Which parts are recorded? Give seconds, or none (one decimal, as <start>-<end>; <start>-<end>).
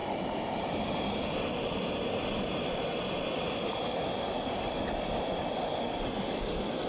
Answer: 0.0-6.9